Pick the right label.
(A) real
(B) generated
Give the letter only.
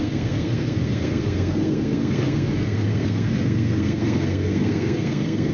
B